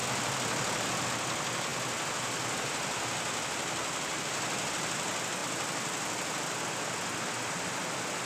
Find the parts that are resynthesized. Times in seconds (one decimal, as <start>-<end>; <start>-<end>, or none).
none